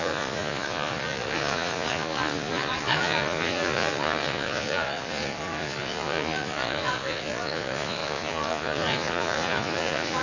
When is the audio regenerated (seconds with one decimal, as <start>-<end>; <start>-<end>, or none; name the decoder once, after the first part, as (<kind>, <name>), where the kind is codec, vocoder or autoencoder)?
0.0-10.2 (vocoder, Vocos)